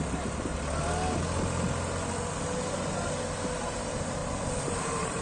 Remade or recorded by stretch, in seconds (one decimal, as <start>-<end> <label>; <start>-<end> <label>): 0.0-0.5 remade; 0.5-3.6 recorded; 3.6-4.2 remade; 4.2-4.8 recorded; 4.8-5.2 remade

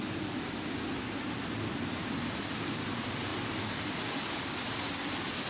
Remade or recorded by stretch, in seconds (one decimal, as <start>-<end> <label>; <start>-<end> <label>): 0.0-5.5 recorded

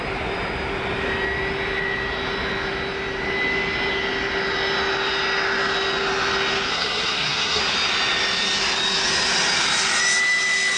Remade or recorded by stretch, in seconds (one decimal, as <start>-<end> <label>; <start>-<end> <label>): 0.0-6.7 recorded; 6.7-7.6 remade; 7.6-10.8 recorded

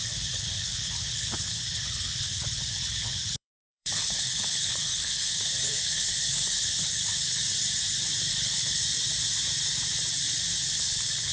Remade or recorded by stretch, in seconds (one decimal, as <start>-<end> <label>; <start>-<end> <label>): 0.0-7.4 remade; 7.4-8.3 recorded; 8.3-8.8 remade; 8.8-10.8 recorded; 10.8-11.3 remade

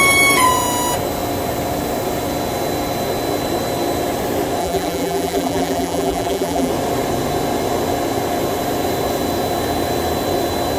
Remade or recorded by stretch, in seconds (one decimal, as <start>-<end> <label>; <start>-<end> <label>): 0.0-4.6 recorded; 4.6-6.7 remade; 6.7-10.8 recorded